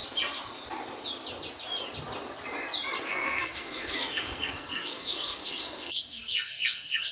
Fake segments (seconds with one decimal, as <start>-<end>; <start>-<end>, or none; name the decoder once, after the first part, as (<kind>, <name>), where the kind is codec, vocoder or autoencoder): 3.0-7.1 (codec, SNAC)